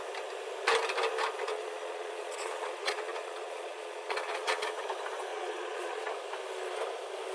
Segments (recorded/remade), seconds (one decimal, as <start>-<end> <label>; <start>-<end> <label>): 0.0-1.5 recorded; 1.5-4.8 remade; 4.8-5.3 recorded; 5.3-6.1 remade; 6.1-7.3 recorded